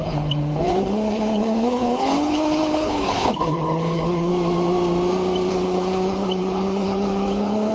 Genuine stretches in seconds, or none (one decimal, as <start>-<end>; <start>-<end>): 4.3-5.5